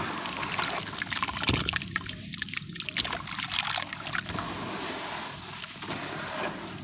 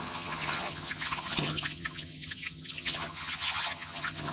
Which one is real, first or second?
first